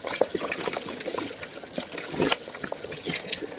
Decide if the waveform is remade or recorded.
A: remade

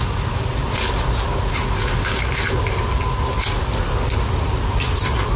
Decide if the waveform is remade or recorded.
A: recorded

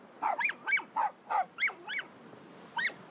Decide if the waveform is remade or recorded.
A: recorded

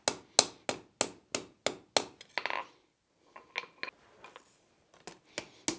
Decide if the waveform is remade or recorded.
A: recorded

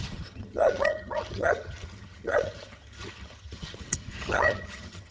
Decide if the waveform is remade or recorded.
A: remade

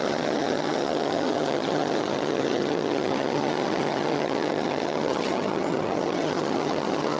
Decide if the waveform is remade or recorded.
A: remade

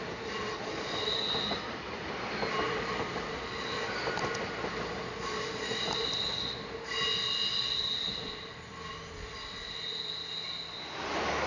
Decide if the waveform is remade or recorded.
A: recorded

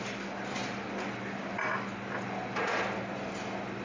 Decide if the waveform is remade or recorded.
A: recorded